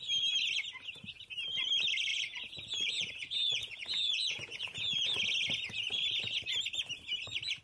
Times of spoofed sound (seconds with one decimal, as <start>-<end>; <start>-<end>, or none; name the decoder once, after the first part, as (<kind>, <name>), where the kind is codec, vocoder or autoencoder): 2.1-5.2 (vocoder, Vocos)